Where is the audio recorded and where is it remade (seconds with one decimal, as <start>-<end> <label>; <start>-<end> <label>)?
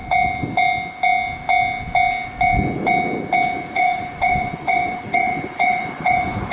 0.0-3.7 recorded; 3.7-6.5 remade